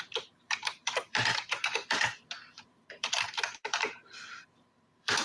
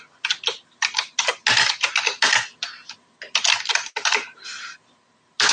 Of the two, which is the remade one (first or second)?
first